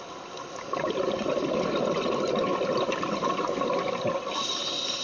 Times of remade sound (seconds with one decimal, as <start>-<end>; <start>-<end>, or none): none